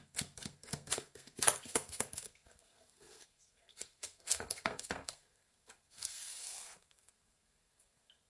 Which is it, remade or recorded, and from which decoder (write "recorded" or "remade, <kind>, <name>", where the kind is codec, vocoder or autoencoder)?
remade, codec, SNAC